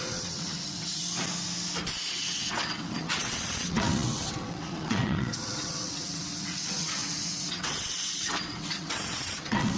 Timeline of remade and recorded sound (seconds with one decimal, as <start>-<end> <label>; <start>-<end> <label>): 0.0-1.0 remade; 1.0-2.1 recorded; 2.1-9.8 remade